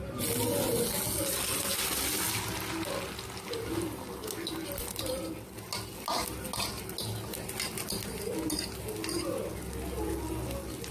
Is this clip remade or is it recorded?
recorded